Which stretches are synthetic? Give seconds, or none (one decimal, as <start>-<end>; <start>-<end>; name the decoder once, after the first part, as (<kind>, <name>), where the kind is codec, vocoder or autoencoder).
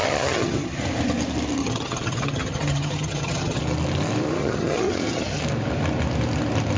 0.0-0.8 (vocoder, HiFi-GAN); 1.6-3.6; 4.4-5.4